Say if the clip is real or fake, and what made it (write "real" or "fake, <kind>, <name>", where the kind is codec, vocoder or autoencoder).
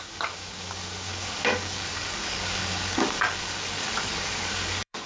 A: fake, codec, DAC